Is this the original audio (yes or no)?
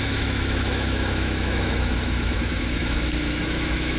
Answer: no